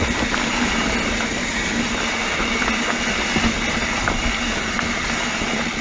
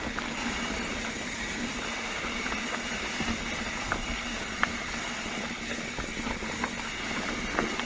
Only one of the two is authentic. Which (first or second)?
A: first